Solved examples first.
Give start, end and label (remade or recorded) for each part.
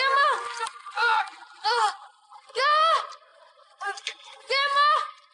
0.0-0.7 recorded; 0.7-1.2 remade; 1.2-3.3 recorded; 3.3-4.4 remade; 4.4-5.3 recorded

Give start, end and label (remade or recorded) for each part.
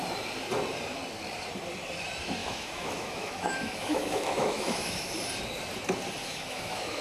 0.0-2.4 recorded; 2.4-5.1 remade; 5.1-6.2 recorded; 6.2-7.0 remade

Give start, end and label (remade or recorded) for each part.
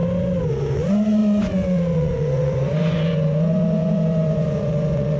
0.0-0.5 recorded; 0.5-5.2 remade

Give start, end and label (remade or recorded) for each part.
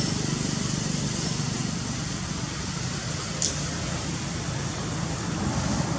0.0-6.0 recorded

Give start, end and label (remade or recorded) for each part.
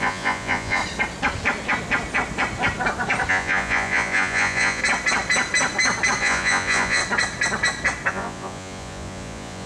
0.0-0.8 remade; 0.8-3.3 recorded; 3.3-4.8 remade; 4.8-6.2 recorded; 6.2-7.0 remade; 7.0-8.1 recorded; 8.1-9.7 remade